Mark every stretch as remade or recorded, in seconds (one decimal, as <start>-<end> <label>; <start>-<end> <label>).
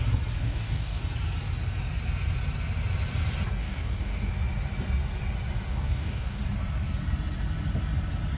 0.0-0.4 recorded; 0.4-1.0 remade; 1.0-3.6 recorded; 3.6-4.3 remade; 4.3-5.7 recorded; 5.7-6.4 remade; 6.4-8.4 recorded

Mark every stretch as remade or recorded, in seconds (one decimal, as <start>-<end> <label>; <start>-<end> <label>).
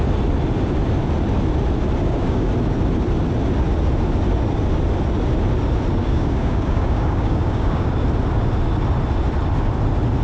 0.0-2.0 recorded; 2.0-2.5 remade; 2.5-6.0 recorded; 6.0-7.9 remade; 7.9-10.2 recorded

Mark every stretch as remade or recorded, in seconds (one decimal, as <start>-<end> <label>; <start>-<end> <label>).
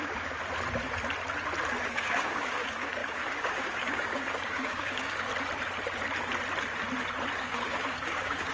0.0-0.4 remade; 0.4-1.8 recorded; 1.8-5.3 remade; 5.3-7.4 recorded; 7.4-8.5 remade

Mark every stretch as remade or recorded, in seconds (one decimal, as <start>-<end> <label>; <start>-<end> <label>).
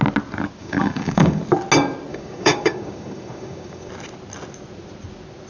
0.0-0.6 recorded; 0.6-1.4 remade; 1.4-2.1 recorded; 2.1-3.9 remade; 3.9-5.5 recorded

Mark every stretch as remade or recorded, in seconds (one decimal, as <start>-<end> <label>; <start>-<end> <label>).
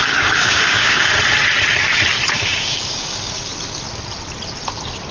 0.0-1.1 remade; 1.1-2.3 recorded; 2.3-3.5 remade; 3.5-5.1 recorded